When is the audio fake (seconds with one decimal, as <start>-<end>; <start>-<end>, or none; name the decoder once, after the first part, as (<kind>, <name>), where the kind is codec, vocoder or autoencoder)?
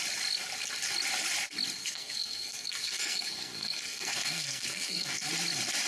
1.8-5.3 (codec, SNAC)